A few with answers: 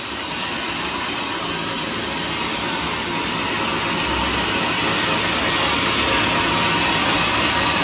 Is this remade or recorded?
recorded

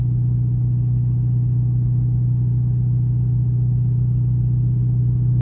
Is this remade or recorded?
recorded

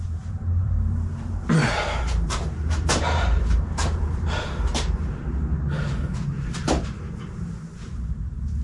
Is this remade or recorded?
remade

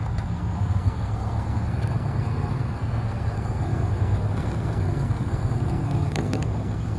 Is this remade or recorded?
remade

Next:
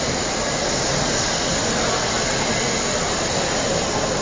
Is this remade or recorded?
recorded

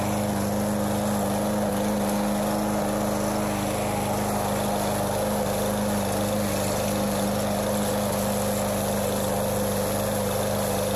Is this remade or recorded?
recorded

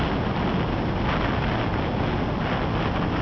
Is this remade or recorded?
recorded